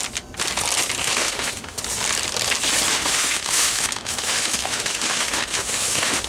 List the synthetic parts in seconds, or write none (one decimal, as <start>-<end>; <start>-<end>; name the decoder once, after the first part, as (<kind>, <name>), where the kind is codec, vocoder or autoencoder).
1.0-1.8 (autoencoder, DAC-VAE); 2.9-6.3